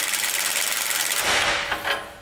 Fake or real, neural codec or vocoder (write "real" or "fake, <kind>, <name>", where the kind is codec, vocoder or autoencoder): real